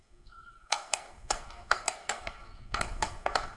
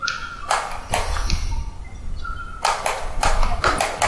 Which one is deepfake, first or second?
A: first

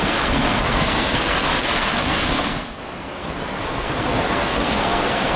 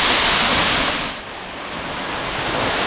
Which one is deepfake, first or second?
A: first